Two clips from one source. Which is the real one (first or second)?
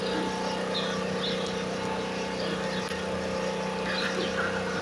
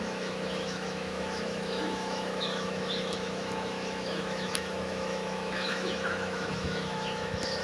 first